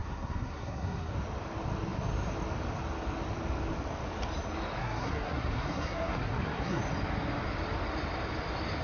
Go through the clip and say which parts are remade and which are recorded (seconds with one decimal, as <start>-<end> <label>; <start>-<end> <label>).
0.0-1.1 remade; 1.1-4.8 recorded; 4.8-6.8 remade; 6.8-8.8 recorded